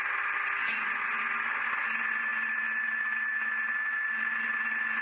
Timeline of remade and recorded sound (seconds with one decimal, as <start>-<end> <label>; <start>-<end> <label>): 0.0-0.6 recorded; 0.6-1.2 remade; 1.2-5.0 recorded